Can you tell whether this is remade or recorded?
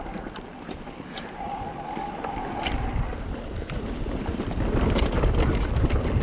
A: recorded